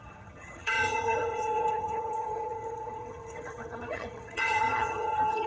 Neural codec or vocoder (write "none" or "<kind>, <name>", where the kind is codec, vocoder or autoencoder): vocoder, HiFi-GAN